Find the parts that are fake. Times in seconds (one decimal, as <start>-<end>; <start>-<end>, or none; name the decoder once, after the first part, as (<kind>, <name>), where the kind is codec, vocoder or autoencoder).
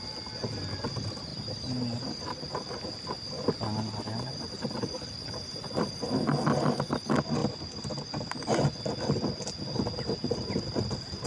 none